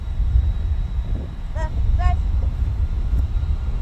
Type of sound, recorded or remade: remade